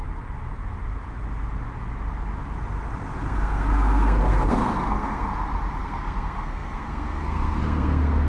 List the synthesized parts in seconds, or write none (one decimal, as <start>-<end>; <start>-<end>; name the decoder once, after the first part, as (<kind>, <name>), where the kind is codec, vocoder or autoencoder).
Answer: 3.2-5.3 (codec, SNAC); 5.8-8.3